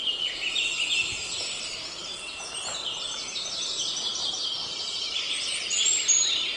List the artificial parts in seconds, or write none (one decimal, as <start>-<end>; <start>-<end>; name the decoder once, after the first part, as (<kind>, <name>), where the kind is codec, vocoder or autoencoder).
1.1-2.4 (vocoder, BigVGAN v2); 4.1-5.5

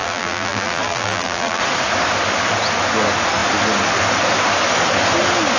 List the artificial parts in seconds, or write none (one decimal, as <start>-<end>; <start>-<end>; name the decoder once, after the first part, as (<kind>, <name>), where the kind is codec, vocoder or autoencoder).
0.0-1.6 (vocoder, BigVGAN v2)

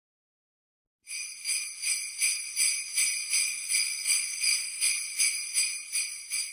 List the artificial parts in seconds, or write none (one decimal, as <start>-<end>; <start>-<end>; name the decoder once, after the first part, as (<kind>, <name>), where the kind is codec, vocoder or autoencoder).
3.4-4.9 (codec, SNAC)

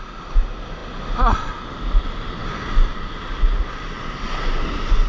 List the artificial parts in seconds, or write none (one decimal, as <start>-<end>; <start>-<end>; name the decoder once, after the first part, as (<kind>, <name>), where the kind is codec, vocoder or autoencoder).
none

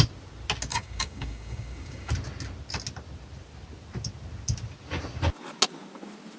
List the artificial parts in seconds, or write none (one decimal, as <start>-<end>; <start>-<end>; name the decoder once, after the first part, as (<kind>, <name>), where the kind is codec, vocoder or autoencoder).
0.7-2.1 (codec, DAC)